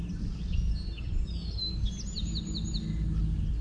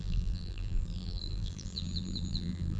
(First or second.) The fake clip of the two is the second